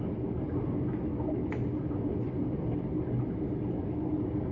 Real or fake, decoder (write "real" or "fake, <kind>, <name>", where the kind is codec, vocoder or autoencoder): real